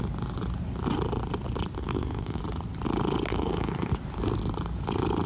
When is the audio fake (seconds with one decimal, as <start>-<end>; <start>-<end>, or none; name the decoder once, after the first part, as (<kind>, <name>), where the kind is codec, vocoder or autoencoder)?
1.8-2.4 (codec, SNAC); 3.3-3.9